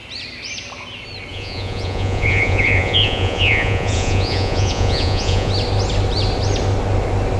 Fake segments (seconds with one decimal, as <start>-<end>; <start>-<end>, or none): 1.3-5.5